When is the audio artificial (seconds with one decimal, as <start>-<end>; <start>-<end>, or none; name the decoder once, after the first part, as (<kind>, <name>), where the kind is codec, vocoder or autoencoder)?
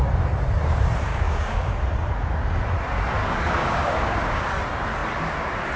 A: 1.1-1.7 (codec, DAC); 3.2-4.5